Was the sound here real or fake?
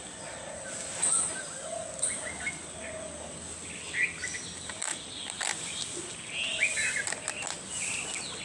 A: real